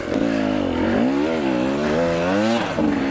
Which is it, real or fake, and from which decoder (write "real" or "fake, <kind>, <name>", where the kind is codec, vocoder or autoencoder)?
real